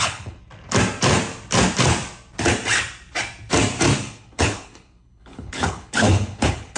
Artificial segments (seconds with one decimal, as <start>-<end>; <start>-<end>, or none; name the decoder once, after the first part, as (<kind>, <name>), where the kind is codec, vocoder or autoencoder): 0.0-0.4 (codec, HILCodec); 4.0-6.8